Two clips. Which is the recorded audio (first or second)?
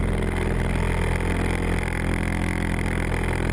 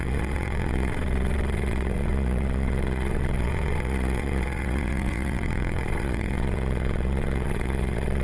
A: first